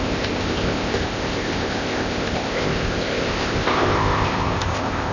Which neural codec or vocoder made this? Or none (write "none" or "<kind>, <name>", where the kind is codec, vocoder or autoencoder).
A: codec, ZipCodec